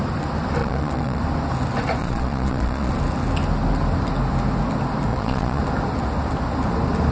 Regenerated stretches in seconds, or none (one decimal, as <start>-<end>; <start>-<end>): 0.6-1.2; 2.0-2.9; 5.1-5.6